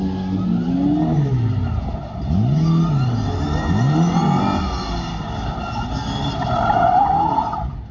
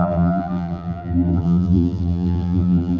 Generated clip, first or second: second